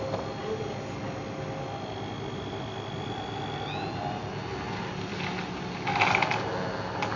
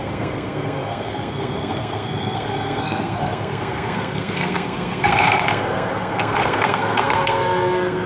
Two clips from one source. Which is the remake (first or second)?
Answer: second